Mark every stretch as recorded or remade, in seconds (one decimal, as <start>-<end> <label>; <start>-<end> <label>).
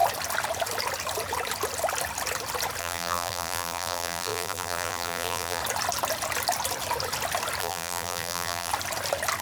0.0-2.8 recorded; 2.8-5.6 remade; 5.6-7.6 recorded; 7.6-8.7 remade; 8.7-9.4 recorded